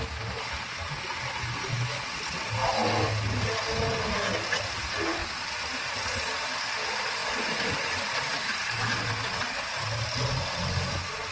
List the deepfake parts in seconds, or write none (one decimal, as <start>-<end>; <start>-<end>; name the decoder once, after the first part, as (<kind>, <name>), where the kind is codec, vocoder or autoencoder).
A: none

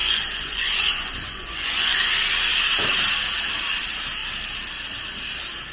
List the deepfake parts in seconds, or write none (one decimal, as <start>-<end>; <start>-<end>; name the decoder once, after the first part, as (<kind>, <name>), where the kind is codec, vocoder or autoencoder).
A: 0.0-2.0 (vocoder, Vocos)

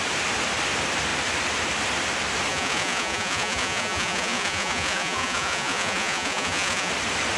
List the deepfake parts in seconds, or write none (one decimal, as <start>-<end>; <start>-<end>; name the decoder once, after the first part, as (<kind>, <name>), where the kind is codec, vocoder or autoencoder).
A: 2.5-6.9 (vocoder, Vocos)

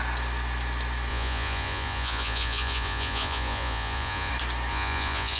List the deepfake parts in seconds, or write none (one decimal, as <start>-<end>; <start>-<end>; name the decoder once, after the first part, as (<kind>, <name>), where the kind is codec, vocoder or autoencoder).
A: 1.1-4.3 (vocoder, Vocos); 4.7-5.4

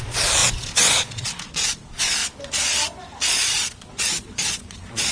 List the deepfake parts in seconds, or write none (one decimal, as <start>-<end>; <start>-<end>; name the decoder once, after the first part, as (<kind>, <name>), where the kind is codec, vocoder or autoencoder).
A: 0.0-2.2 (vocoder, Vocos); 3.3-5.1

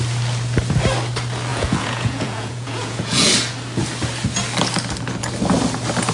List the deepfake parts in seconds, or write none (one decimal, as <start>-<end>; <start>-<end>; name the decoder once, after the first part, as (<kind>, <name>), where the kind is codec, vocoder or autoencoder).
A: 1.5-3.3 (vocoder, Vocos)

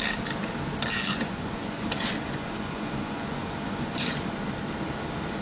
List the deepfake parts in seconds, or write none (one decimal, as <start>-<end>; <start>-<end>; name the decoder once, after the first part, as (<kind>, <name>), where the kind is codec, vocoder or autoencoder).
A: 1.1-4.3 (vocoder, Vocos)